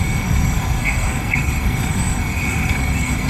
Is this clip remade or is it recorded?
remade